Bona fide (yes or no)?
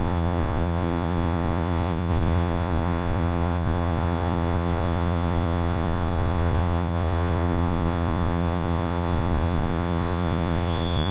no